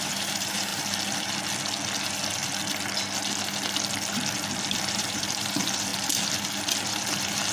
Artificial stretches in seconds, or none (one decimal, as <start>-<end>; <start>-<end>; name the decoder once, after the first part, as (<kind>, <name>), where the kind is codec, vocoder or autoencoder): 0.0-0.7 (vocoder, BigVGAN v2); 4.9-5.9; 6.9-7.5